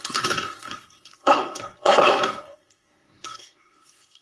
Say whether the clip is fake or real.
fake